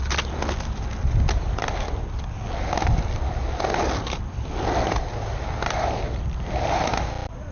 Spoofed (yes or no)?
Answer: no